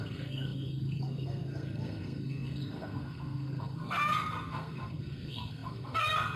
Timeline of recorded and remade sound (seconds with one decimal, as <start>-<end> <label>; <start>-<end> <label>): 0.0-6.4 remade